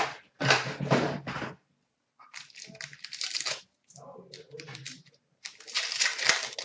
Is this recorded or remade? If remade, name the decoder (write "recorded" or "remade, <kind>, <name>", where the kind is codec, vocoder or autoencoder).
recorded